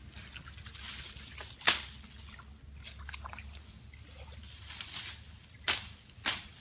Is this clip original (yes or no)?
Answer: yes